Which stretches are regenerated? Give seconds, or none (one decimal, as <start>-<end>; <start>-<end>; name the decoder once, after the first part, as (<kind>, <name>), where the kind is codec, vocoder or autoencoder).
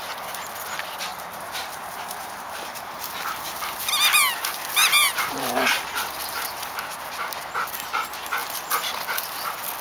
1.1-3.1 (vocoder, BigVGAN v2); 4.8-7.3